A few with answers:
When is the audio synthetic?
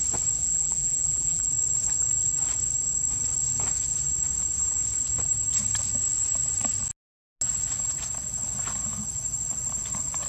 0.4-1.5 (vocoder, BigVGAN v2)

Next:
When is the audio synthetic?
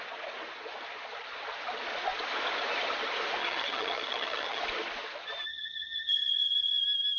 3.4-4.6 (vocoder, HiFi-GAN); 5.5-6.8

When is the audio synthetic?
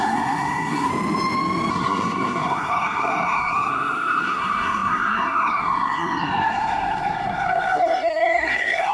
0.0-0.9 (codec, SNAC); 1.7-8.9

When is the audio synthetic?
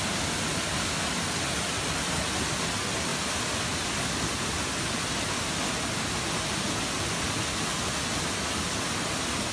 none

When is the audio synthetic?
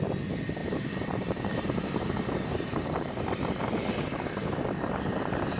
0.6-3.8 (vocoder, BigVGAN v2)